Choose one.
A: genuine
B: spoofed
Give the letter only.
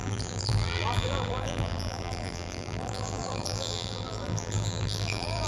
B